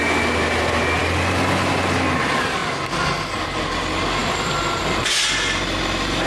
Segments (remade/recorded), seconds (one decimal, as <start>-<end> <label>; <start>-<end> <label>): 0.0-6.3 recorded